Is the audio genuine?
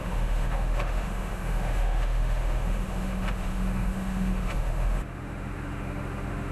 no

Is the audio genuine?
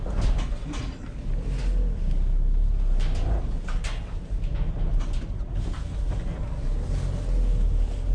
yes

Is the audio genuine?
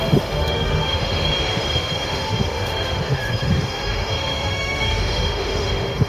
no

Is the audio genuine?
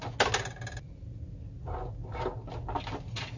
yes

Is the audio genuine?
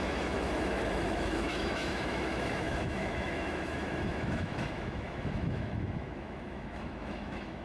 no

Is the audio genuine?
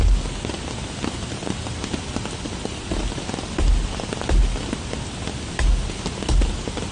yes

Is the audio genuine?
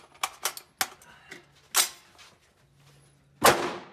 yes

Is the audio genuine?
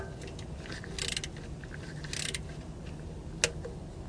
yes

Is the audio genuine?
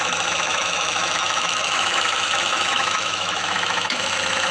no